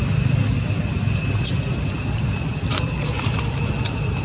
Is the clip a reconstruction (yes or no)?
no